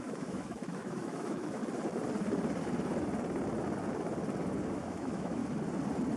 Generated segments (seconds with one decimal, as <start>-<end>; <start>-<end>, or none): 0.0-1.6; 4.7-5.4